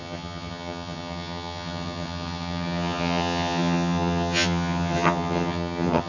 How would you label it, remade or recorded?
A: remade